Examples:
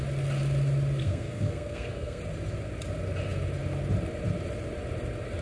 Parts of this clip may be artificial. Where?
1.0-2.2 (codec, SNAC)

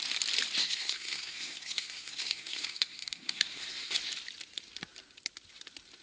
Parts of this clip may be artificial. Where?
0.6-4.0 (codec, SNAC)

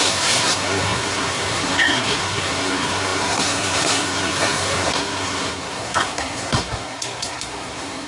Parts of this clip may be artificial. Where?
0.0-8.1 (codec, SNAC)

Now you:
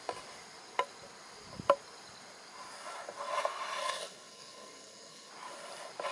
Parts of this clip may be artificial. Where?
3.8-5.3 (codec, SNAC)

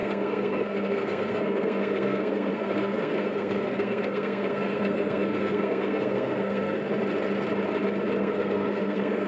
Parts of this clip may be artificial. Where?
0.0-6.8 (codec, SNAC); 8.2-9.3

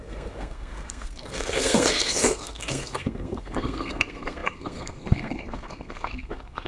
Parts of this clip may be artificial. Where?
0.0-6.7 (codec, SNAC)

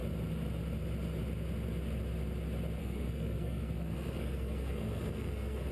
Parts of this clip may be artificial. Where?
2.8-5.7 (codec, SNAC)